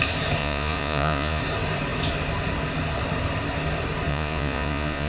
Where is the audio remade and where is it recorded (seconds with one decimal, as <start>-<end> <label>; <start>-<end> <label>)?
0.0-0.4 recorded; 0.4-1.4 remade; 1.4-4.1 recorded; 4.1-5.1 remade